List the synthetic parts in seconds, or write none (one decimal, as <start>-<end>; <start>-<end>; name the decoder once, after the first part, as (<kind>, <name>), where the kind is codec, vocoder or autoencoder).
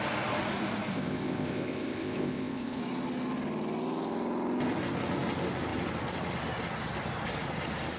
0.9-2.8 (codec, ZipCodec)